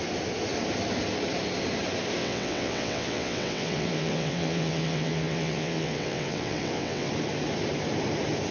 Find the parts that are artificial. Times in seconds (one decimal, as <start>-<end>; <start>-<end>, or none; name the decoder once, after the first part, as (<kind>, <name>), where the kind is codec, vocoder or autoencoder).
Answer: 2.2-7.1 (vocoder, WaveNeXt)